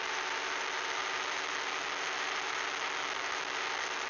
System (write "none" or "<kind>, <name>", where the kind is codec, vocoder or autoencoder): none